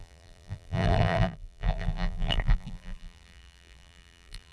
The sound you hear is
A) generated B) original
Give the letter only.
A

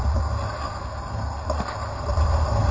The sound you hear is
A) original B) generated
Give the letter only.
B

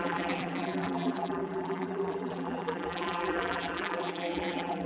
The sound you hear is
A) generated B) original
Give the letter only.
A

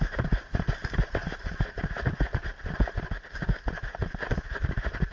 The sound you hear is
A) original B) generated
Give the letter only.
A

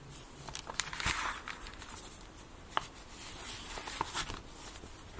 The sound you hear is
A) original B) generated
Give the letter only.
B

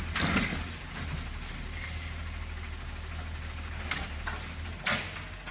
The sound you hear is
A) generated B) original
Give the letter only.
B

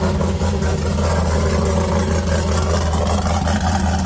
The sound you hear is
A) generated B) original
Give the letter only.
B